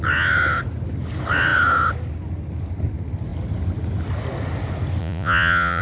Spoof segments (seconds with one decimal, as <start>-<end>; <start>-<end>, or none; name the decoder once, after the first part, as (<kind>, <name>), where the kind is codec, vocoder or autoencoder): 5.0-5.8 (vocoder, Vocos)